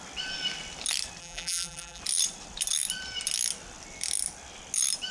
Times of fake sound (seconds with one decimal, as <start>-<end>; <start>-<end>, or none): 1.2-2.0